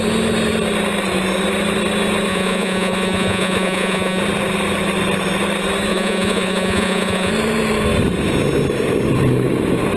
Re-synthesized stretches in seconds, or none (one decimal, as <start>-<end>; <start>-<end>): 2.3-4.2; 5.9-7.3

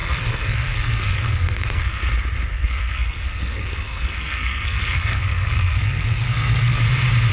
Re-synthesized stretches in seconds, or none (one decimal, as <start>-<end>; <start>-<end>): 0.0-2.0; 2.5-6.8

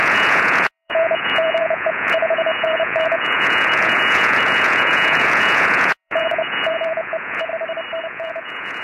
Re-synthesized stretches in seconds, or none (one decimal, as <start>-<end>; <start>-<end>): 0.0-7.5; 8.0-8.8